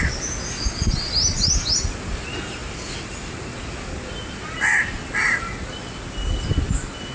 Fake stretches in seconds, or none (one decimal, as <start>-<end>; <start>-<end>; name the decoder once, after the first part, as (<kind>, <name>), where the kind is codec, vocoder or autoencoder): none